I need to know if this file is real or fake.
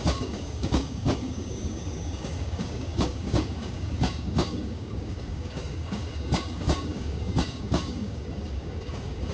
fake